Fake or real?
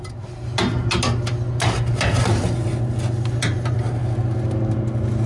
real